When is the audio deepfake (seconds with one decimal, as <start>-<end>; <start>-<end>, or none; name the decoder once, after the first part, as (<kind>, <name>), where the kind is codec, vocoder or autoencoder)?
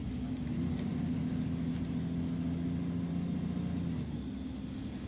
none